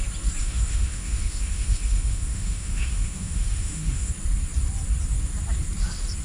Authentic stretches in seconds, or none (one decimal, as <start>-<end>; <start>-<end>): 0.0-0.4; 4.1-6.2